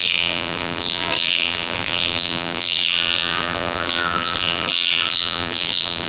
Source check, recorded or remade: remade